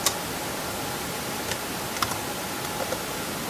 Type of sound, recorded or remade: recorded